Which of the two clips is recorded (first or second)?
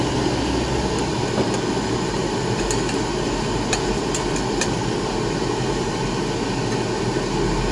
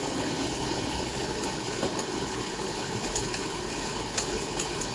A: first